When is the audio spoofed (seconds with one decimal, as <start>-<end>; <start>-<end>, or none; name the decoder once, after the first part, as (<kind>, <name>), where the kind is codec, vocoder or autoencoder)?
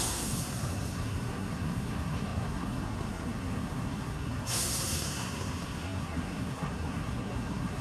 0.0-7.8 (codec, SNAC)